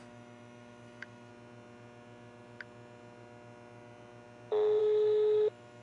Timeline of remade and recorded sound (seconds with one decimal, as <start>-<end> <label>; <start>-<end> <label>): 0.0-1.3 remade; 1.3-4.8 recorded; 4.8-5.8 remade

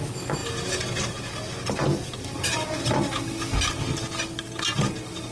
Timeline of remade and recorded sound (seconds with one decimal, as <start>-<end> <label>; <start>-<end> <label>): 0.0-5.3 recorded